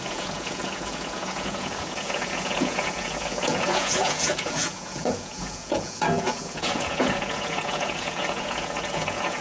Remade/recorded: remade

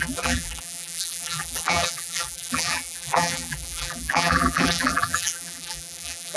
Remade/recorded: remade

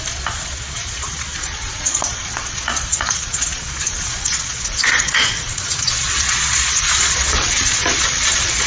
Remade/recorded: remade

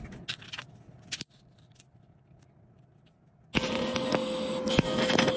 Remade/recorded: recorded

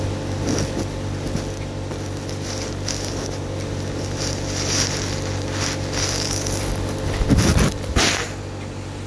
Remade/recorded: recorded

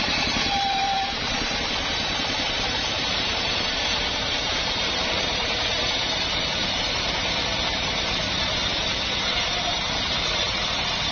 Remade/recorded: remade